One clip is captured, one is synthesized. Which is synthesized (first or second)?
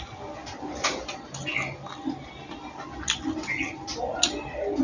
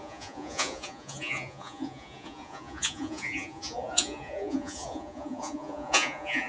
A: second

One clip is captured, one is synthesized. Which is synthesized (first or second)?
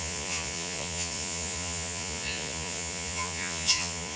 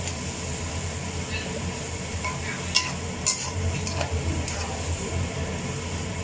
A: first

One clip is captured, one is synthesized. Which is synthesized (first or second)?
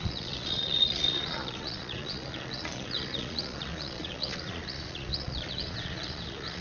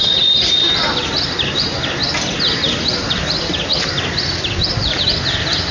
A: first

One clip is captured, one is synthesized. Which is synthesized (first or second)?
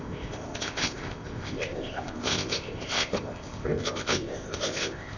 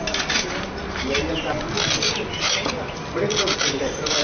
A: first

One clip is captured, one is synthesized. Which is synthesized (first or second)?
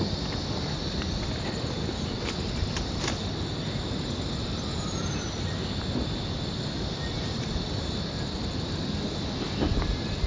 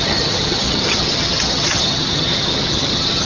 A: second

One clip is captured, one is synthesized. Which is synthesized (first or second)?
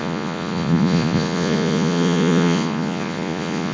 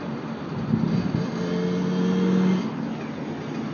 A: first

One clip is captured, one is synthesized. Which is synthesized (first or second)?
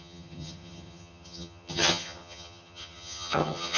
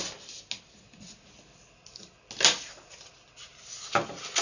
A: first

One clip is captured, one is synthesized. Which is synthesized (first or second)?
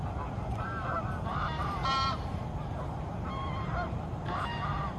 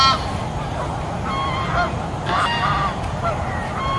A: first